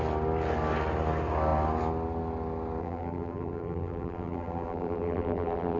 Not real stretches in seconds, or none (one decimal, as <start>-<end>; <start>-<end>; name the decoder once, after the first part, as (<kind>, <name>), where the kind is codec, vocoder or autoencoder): 2.8-5.8 (vocoder, BigVGAN v2)